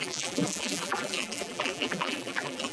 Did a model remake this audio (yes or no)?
yes